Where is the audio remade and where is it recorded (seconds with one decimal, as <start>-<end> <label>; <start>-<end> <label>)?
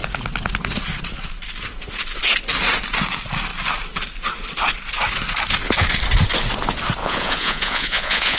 0.0-7.0 recorded; 7.0-8.4 remade